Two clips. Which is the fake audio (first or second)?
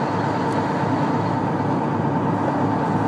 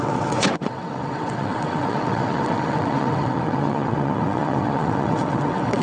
second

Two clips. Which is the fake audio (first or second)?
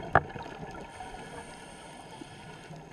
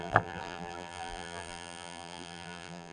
second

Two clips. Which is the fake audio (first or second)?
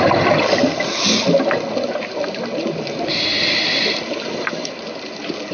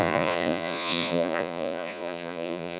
second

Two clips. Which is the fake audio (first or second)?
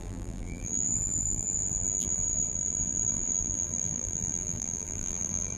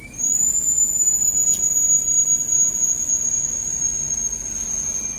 first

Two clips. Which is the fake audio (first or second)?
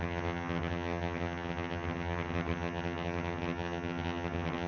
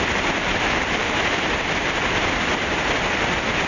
first